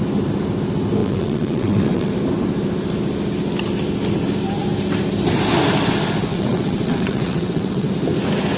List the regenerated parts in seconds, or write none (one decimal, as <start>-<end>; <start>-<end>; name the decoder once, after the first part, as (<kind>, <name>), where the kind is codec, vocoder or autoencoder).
1.0-2.1 (vocoder, WaveNeXt); 6.3-7.9